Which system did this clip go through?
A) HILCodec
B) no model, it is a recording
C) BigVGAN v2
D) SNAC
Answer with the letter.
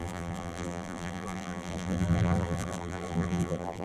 C